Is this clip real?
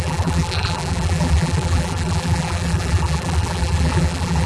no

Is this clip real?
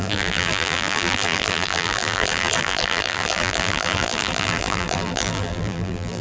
no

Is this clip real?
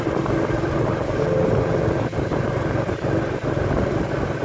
yes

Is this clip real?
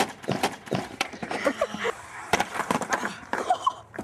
no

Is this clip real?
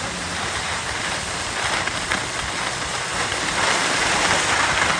yes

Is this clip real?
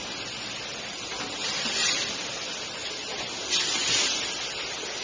yes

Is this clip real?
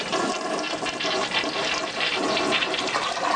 yes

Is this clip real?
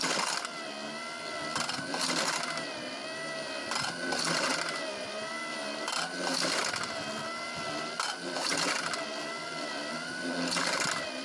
yes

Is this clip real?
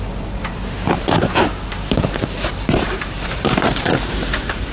no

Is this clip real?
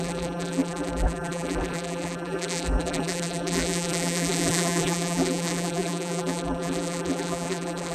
no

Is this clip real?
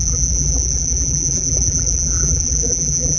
no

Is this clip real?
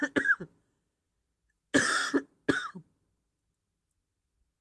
yes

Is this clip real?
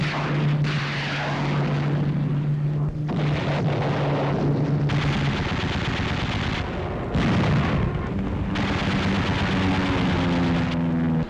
yes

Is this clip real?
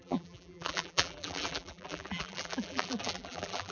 no